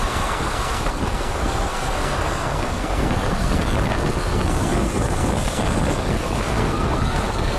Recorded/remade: remade